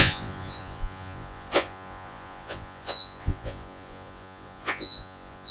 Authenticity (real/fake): fake